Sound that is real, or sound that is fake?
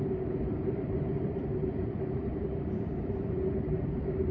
fake